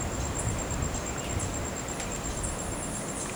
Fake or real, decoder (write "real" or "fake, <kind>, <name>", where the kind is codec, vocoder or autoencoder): real